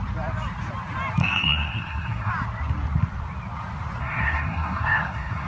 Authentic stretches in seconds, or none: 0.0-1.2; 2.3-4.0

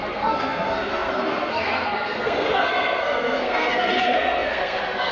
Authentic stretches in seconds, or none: none

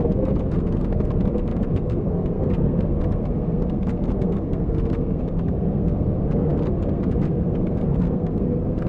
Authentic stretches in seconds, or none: none

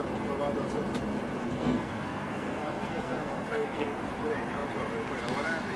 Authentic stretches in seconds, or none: 0.0-1.4; 4.1-5.8